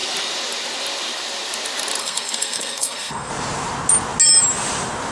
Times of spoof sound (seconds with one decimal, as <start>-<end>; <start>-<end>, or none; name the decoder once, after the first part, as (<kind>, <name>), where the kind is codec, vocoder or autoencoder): 2.0-3.3 (codec, SNAC)